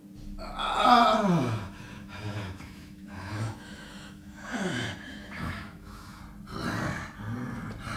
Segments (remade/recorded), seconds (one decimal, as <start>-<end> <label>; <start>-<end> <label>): 0.0-1.4 recorded; 1.4-6.2 remade; 6.2-8.0 recorded